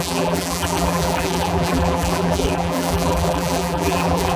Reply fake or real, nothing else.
fake